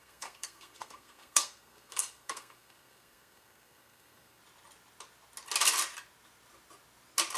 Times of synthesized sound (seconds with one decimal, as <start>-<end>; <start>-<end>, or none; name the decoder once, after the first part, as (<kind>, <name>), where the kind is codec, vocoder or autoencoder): 0.0-4.4 (codec, SNAC)